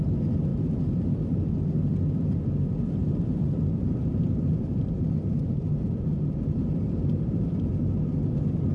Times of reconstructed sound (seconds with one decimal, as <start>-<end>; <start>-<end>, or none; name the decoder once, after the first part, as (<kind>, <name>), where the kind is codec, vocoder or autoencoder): 0.5-1.5 (vocoder, BigVGAN v2); 3.0-3.6; 4.0-7.7

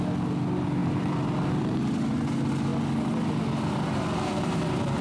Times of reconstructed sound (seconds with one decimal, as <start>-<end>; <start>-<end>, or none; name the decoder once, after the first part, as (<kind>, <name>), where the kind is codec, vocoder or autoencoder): 0.8-2.3 (vocoder, BigVGAN v2); 4.3-5.0

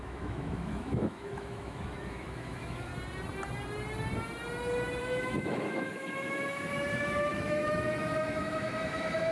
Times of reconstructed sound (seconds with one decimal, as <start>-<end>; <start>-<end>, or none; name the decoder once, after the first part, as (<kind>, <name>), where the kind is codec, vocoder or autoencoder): 0.0-2.9 (autoencoder, DAC-VAE); 5.0-9.3

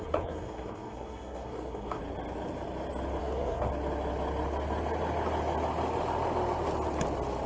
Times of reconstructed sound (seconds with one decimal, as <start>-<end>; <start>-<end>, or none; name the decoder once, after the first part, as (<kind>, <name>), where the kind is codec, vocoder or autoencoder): 0.0-2.0 (codec, SNAC); 3.2-3.7